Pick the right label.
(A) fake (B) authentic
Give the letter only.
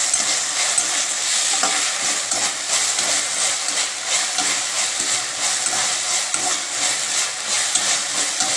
B